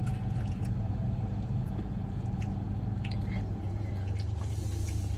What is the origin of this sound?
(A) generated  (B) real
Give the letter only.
A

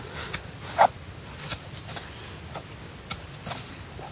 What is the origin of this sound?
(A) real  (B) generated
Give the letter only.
A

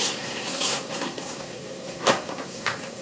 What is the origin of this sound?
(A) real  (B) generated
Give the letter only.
B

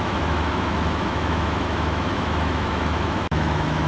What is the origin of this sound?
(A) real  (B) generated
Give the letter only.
B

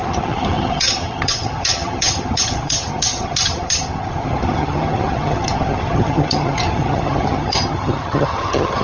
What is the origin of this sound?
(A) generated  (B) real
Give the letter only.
A